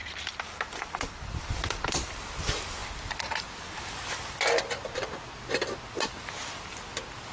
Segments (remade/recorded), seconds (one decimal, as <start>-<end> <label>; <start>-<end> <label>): 0.0-2.3 remade; 2.3-7.3 recorded